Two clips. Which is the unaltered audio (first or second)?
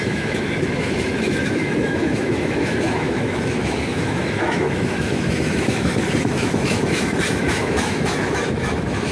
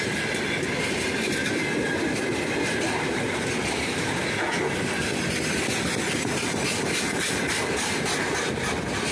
second